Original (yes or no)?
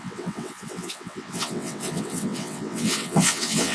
no